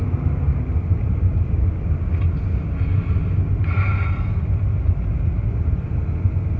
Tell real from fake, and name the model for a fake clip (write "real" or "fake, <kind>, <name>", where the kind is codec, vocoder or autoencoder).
real